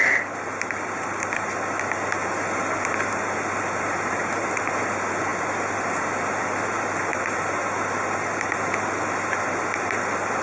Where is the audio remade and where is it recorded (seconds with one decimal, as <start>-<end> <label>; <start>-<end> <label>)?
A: 0.0-10.4 recorded